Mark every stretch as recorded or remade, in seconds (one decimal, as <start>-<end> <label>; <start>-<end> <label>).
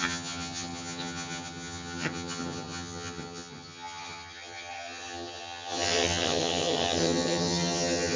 0.0-8.2 remade